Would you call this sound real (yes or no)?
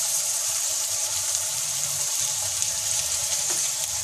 no